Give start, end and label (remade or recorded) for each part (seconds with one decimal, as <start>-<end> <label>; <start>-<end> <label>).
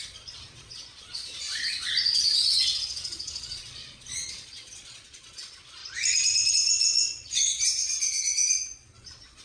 0.0-5.8 remade; 5.8-6.5 recorded; 6.5-9.4 remade